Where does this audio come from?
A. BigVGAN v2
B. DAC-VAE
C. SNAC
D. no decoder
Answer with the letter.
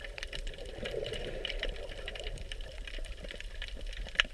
A